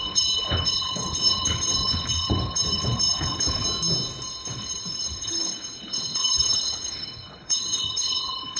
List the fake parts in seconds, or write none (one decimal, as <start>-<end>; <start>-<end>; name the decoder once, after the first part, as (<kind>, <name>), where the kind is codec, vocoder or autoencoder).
0.0-3.6 (codec, HILCodec); 4.5-8.6